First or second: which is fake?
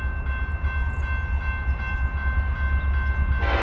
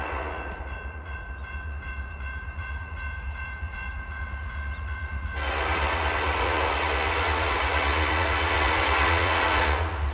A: second